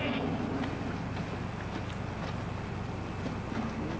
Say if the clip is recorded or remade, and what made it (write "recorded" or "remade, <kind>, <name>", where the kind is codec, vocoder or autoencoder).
recorded